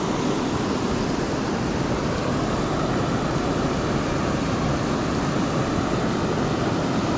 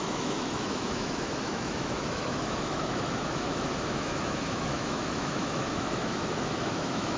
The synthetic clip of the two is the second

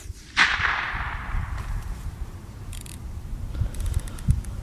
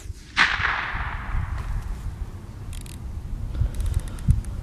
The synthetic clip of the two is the first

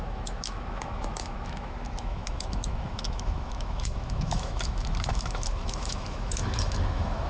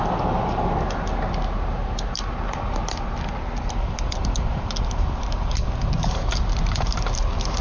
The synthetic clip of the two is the first